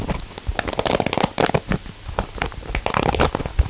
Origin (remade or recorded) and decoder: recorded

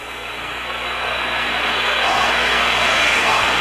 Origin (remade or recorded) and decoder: remade, codec, SNAC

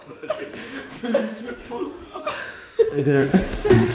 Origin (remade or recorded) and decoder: remade, autoencoder, DAC-VAE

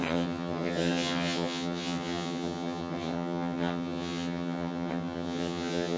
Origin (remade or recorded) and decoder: remade, vocoder, HiFi-GAN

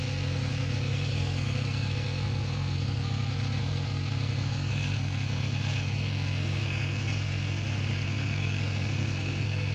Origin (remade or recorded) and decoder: remade, codec, SNAC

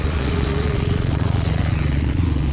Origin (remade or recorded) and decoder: remade, vocoder, Vocos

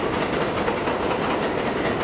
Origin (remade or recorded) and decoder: recorded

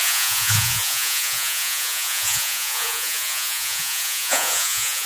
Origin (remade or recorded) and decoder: remade, vocoder, Vocos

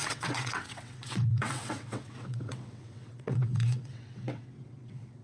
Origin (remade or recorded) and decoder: remade, vocoder, WaveNeXt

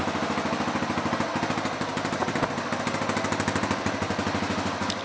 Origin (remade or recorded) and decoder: recorded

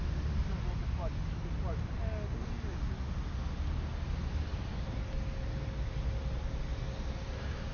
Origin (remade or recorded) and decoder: recorded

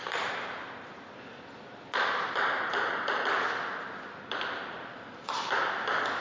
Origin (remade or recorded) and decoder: recorded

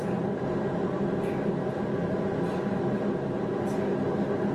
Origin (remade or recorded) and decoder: recorded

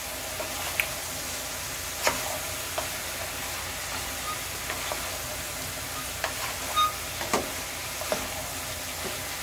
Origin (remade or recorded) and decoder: recorded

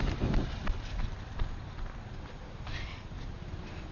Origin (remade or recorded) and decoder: recorded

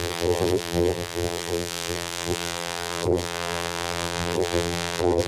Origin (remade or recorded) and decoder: remade, vocoder, BigVGAN v2